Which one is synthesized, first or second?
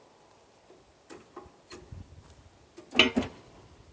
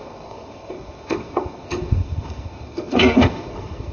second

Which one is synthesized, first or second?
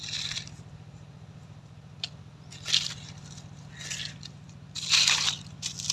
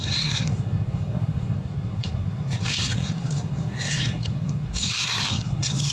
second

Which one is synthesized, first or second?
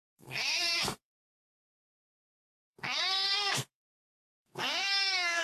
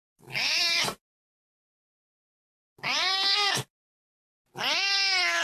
first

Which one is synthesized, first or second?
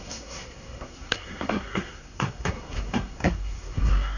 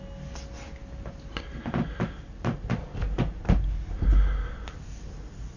first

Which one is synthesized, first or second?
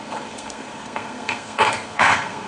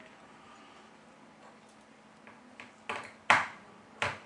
first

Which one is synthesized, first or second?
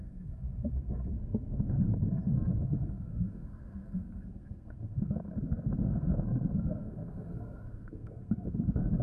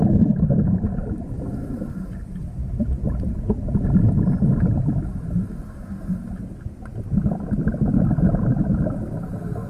first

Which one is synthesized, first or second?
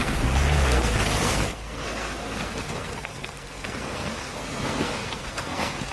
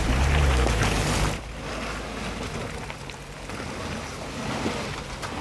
first